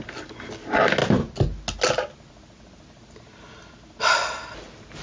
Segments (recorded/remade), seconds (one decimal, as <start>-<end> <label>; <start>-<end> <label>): 0.0-5.0 recorded

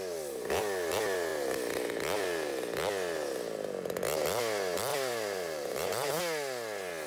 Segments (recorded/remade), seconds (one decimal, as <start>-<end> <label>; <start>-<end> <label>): 0.0-4.9 recorded; 4.9-6.2 remade; 6.2-7.1 recorded

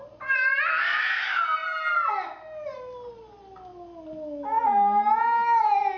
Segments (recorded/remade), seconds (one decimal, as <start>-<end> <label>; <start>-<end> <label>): 0.0-6.0 recorded

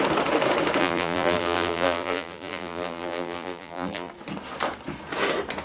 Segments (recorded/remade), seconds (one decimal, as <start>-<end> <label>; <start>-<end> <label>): 0.0-0.8 recorded; 0.8-4.1 remade; 4.1-5.6 recorded

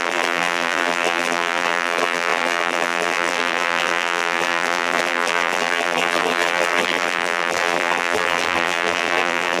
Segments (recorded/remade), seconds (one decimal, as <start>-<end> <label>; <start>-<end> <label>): 0.0-9.6 remade